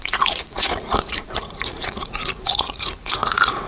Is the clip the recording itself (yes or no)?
no